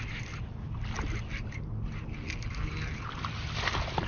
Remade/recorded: recorded